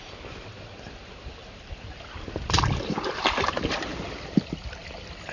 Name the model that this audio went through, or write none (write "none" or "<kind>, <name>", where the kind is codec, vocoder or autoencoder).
none